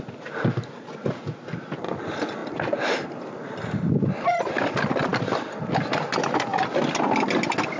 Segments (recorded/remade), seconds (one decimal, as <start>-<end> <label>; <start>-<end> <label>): 0.0-7.8 recorded